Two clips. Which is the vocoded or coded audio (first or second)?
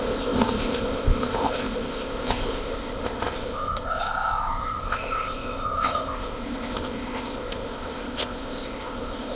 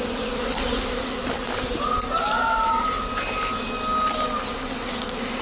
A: first